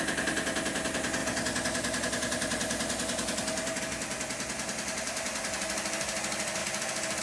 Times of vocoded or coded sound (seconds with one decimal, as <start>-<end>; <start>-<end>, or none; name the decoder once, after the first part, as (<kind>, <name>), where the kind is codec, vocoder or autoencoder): 6.6-7.2 (vocoder, BigVGAN v2)